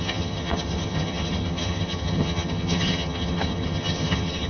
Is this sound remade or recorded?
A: remade